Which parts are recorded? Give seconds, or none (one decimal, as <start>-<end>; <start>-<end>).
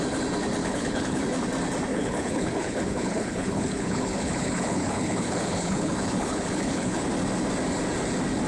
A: 0.0-0.6; 1.2-1.9; 7.0-8.5